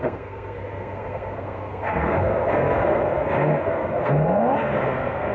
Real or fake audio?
fake